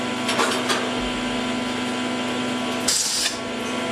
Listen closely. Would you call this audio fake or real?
real